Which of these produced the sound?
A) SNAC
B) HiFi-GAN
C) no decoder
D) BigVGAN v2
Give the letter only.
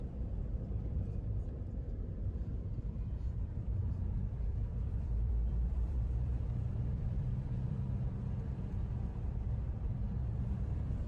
D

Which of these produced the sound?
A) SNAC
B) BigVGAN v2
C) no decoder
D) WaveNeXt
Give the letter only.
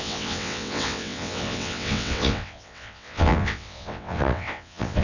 D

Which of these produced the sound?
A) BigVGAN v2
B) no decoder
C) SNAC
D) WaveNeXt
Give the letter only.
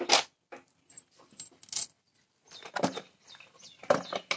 B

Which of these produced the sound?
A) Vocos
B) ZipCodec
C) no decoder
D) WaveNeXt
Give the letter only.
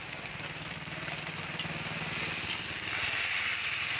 C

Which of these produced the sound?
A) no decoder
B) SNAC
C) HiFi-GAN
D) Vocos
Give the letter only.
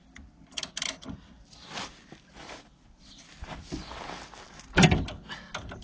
A